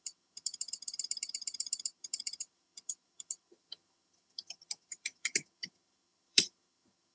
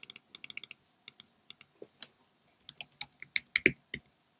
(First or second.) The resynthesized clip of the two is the first